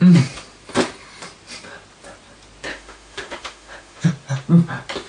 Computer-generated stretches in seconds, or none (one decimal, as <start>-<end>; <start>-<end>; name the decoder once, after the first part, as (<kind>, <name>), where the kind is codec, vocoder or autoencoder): 2.7-4.1 (autoencoder, DAC-VAE)